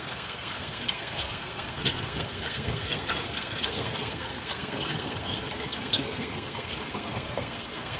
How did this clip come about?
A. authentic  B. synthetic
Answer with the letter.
B